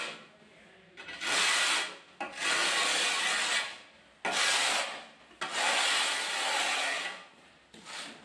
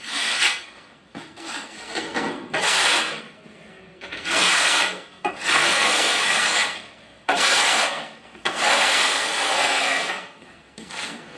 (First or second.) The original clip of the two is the first